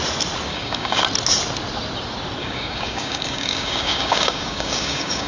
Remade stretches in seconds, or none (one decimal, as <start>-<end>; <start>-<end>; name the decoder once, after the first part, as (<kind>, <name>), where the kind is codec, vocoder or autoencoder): 0.5-1.0 (codec, DAC); 2.4-5.3

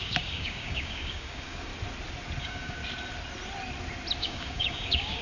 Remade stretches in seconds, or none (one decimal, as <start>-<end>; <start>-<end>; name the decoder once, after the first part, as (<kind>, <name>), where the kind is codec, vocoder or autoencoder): 0.0-1.7 (codec, DAC); 2.4-2.8; 4.2-5.2